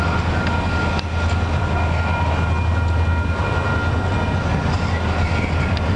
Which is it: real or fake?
real